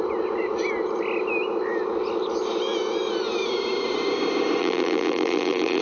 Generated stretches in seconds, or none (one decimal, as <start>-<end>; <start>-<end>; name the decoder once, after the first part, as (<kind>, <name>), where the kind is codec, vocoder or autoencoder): 4.6-5.8 (vocoder, BigVGAN v2)